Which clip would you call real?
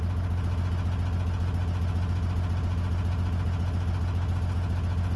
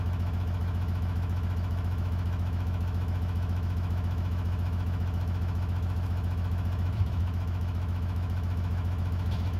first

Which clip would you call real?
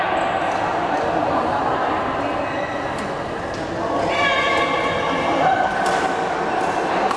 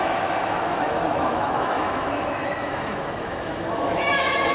first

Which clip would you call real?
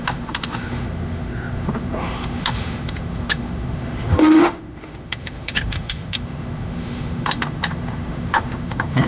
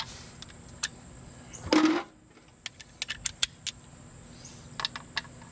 second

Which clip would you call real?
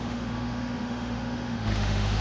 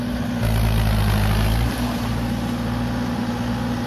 second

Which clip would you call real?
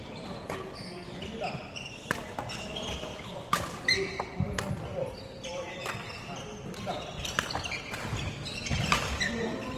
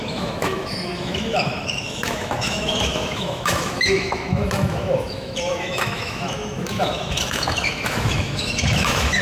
first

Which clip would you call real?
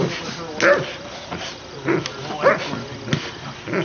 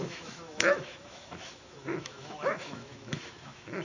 first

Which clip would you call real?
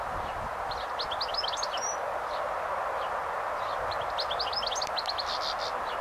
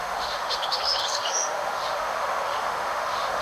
first